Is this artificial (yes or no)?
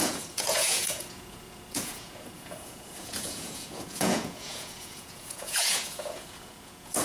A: yes